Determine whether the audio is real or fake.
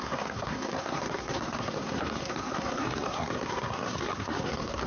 fake